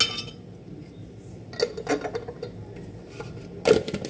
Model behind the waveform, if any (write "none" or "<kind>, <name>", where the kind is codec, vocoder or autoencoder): none